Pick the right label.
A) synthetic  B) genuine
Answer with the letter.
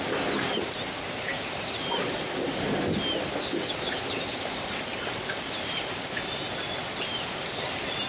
B